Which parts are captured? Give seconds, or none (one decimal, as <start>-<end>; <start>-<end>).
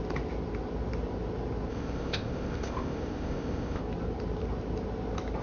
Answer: 0.0-1.7; 3.8-5.4